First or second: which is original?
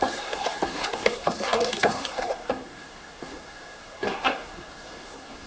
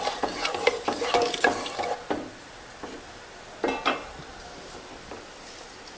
second